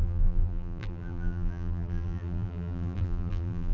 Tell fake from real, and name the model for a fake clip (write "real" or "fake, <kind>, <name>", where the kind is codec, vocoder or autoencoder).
fake, vocoder, BigVGAN v2